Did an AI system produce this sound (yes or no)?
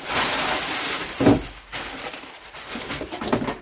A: no